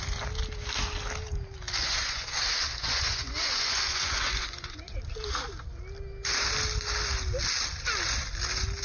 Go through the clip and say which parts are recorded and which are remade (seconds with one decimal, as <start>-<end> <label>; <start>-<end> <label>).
0.0-1.8 recorded; 1.8-2.4 remade; 2.4-2.8 recorded; 2.8-5.0 remade; 5.0-8.8 recorded

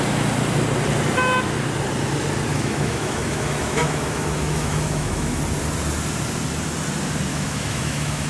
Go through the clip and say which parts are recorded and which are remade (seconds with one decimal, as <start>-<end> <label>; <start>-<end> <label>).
0.0-2.5 recorded; 2.5-5.4 remade; 5.4-7.3 recorded; 7.3-8.3 remade

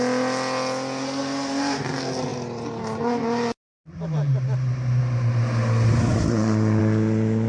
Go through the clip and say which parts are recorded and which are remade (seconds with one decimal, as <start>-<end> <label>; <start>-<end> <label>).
0.0-7.5 recorded

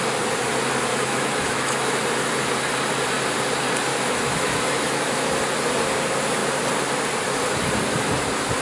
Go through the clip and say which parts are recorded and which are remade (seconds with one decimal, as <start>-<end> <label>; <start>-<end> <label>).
0.0-0.9 recorded; 0.9-2.0 remade; 2.0-3.9 recorded; 3.9-5.3 remade; 5.3-8.6 recorded

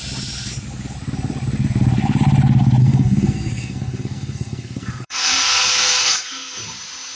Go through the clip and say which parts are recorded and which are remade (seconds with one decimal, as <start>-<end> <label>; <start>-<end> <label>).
0.0-2.8 recorded; 2.8-6.6 remade; 6.6-7.1 recorded